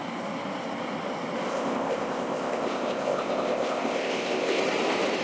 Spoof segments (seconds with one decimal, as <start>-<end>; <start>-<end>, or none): 1.5-4.6